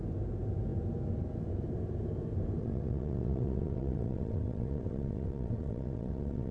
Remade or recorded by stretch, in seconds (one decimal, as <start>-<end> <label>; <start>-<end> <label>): 0.0-2.6 recorded; 2.6-6.5 remade